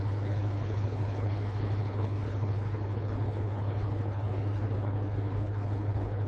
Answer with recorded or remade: remade